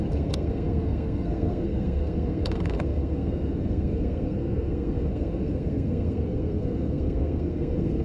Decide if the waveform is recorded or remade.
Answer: remade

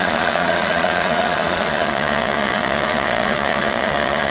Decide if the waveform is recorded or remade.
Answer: remade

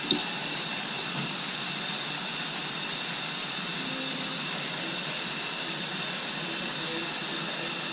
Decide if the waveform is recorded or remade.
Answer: recorded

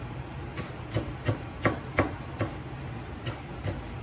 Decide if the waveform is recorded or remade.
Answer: recorded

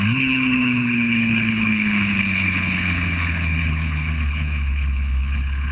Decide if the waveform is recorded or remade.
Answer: remade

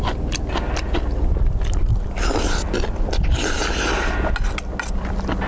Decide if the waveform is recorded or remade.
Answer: recorded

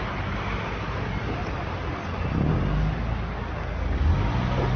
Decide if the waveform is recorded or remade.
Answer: recorded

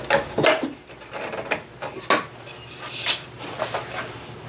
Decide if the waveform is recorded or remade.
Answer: recorded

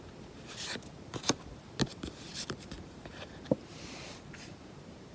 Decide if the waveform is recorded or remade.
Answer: remade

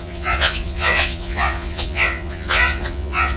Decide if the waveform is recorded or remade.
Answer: remade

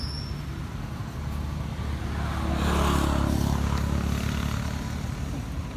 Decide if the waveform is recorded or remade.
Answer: recorded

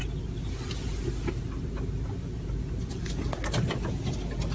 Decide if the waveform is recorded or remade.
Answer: recorded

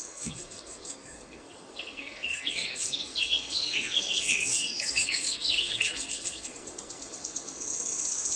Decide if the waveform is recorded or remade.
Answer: remade